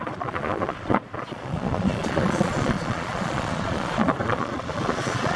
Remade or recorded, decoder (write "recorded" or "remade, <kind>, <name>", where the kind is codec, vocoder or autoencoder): remade, vocoder, Vocos